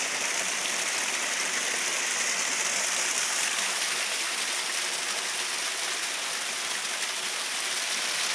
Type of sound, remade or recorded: recorded